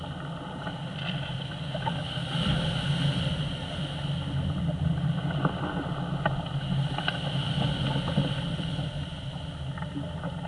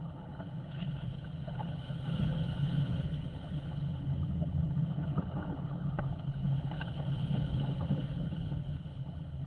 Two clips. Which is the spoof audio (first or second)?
second